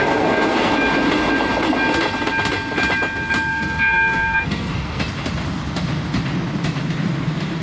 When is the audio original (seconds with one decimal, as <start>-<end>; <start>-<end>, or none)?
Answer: 0.7-3.5; 5.0-7.6